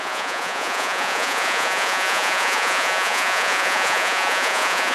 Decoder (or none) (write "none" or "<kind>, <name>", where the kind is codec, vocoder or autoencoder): vocoder, Vocos